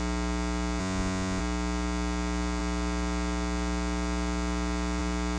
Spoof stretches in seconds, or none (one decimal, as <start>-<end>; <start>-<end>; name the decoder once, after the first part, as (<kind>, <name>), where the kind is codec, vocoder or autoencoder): 0.8-1.4 (vocoder, Vocos)